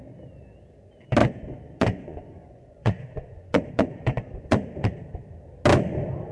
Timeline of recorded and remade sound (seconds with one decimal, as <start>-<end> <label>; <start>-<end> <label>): 0.0-1.2 recorded; 1.2-4.6 remade; 4.6-6.3 recorded

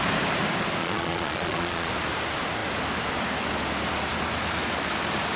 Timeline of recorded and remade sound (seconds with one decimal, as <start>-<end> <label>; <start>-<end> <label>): 0.0-0.8 recorded; 0.8-1.9 remade; 1.9-5.4 recorded

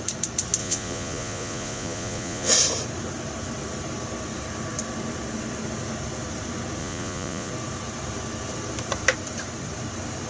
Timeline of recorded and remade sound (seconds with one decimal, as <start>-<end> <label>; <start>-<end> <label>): 0.0-0.6 recorded; 0.6-2.5 remade; 2.5-6.8 recorded; 6.8-7.5 remade; 7.5-10.3 recorded

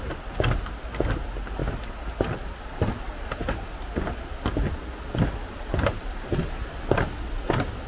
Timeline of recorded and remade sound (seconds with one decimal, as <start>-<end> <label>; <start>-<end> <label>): 0.0-7.9 recorded

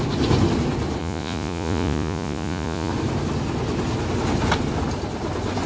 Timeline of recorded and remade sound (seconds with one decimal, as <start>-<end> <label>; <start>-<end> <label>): 0.0-1.0 recorded; 1.0-2.9 remade; 2.9-5.7 recorded